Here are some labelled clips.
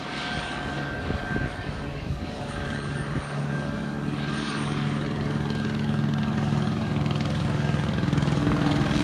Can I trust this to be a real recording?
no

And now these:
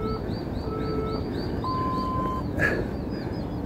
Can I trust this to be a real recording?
yes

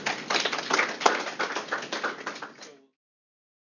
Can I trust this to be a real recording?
yes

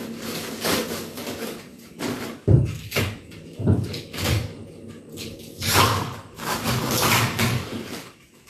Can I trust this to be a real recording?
no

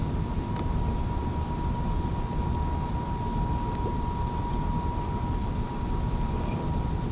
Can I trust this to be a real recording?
yes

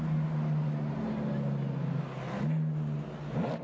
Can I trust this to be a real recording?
yes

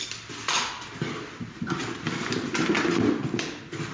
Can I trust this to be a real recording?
yes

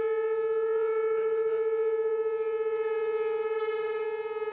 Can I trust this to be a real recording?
yes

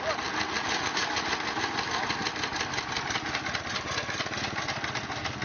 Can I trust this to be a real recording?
yes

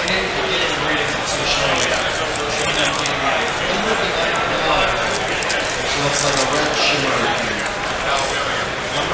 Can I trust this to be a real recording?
yes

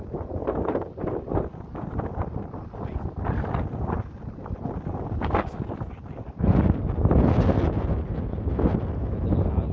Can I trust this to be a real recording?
yes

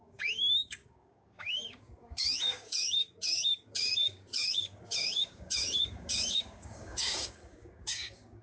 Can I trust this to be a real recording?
no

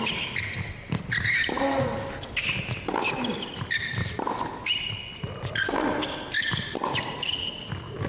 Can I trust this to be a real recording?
yes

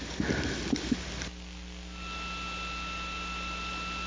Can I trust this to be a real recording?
yes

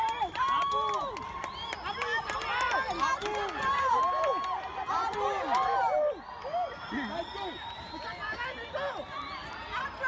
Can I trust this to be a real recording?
yes